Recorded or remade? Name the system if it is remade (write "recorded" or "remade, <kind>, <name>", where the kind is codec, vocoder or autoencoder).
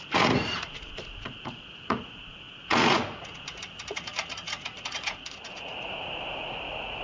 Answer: remade, vocoder, Vocos